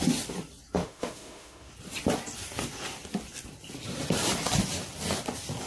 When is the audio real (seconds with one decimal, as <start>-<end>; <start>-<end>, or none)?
0.0-0.8; 1.7-5.7